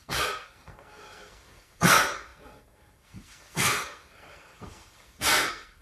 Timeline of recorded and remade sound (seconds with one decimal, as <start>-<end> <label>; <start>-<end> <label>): 0.0-5.8 remade

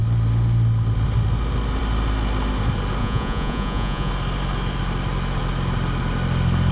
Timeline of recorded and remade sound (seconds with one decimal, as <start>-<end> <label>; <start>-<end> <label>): 0.0-3.0 recorded; 3.0-4.1 remade; 4.1-6.7 recorded

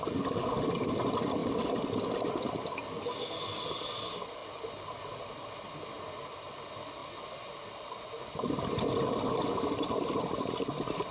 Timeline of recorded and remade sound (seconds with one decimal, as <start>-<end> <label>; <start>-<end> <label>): 0.0-4.4 recorded; 4.4-5.3 remade; 5.3-11.1 recorded

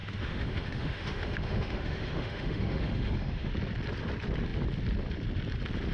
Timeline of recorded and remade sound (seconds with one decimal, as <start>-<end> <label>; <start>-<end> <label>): 0.0-3.5 remade; 3.5-5.9 recorded

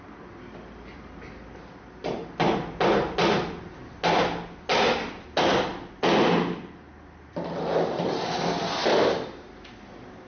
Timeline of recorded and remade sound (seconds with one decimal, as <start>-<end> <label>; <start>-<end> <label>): 0.0-10.3 recorded

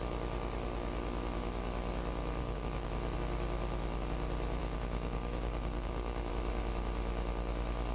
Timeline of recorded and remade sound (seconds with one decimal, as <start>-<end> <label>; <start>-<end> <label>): 0.0-2.4 recorded; 2.4-2.9 remade; 2.9-4.6 recorded; 4.6-6.3 remade; 6.3-7.9 recorded

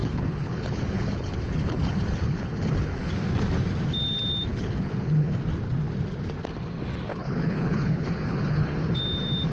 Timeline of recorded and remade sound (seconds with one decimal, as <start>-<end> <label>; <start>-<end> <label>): 0.0-3.1 remade; 3.1-4.5 recorded; 4.5-5.4 remade; 5.4-7.1 recorded; 7.1-9.0 remade; 9.0-9.5 recorded

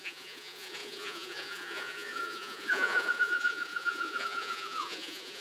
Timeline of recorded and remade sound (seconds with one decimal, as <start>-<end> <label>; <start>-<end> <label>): 0.0-5.4 remade